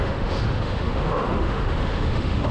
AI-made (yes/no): yes